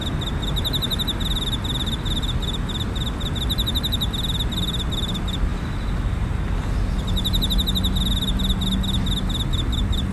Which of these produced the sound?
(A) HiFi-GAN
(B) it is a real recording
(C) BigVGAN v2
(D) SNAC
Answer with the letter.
B